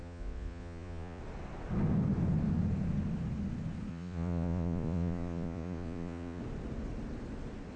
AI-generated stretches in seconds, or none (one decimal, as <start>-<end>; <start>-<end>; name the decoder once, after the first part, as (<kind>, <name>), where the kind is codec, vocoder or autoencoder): 0.0-1.2 (vocoder, Vocos); 3.9-6.4